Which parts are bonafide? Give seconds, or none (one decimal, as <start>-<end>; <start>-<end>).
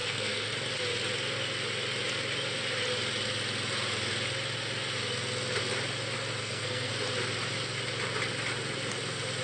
0.5-6.4; 6.9-9.4